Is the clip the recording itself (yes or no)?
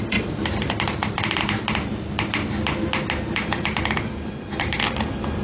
yes